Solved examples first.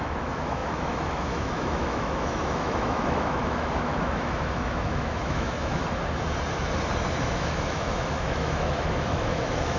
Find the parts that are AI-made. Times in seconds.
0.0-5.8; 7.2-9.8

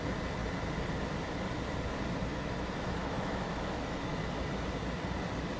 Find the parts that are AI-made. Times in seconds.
2.3-4.2

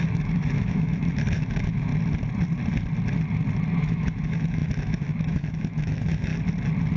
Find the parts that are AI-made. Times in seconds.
0.0-1.9; 3.8-6.3

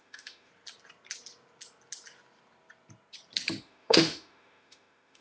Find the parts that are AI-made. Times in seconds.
0.0-0.5; 3.6-5.2